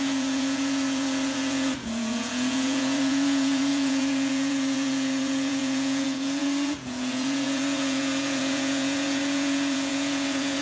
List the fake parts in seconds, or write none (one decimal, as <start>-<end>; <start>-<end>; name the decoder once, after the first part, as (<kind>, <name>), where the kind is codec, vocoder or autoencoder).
0.0-10.6 (vocoder, Vocos)